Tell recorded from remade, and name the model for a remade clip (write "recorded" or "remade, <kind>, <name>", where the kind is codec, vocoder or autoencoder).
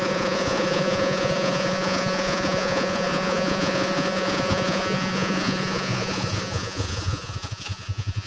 remade, vocoder, Vocos